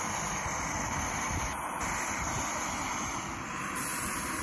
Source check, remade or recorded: recorded